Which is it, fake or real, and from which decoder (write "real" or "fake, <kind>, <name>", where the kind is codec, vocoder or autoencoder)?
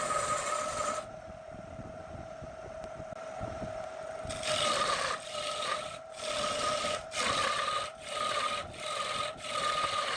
real